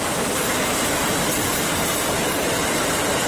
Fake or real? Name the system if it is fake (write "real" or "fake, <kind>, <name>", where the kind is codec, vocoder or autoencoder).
fake, vocoder, BigVGAN v2